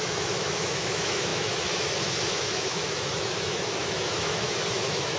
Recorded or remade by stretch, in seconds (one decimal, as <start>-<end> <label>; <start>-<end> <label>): 0.0-5.2 remade